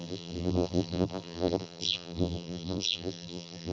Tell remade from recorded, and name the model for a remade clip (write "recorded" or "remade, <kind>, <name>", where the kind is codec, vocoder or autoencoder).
remade, vocoder, BigVGAN v2